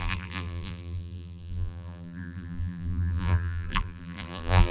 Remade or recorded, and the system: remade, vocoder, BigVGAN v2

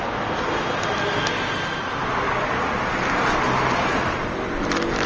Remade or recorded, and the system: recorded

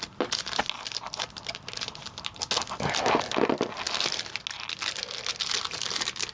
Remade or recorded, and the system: recorded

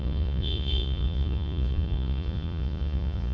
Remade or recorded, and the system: remade, vocoder, Vocos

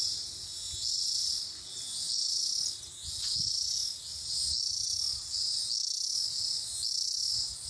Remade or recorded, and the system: recorded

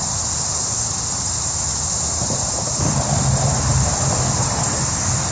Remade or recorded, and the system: recorded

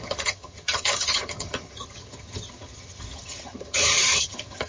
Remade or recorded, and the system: remade, vocoder, HiFi-GAN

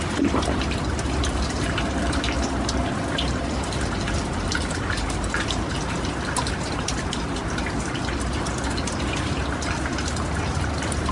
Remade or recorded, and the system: remade, vocoder, BigVGAN v2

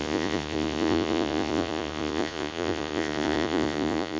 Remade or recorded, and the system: remade, vocoder, Vocos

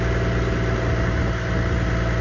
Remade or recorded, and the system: recorded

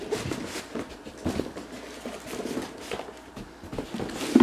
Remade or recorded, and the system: recorded